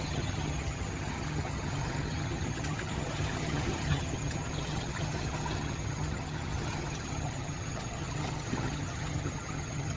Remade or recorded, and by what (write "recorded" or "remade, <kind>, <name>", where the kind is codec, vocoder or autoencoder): remade, vocoder, HiFi-GAN